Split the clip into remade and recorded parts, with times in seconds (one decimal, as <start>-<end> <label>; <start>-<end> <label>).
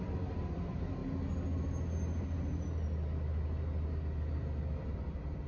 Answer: 0.0-1.0 remade; 1.0-4.3 recorded; 4.3-5.5 remade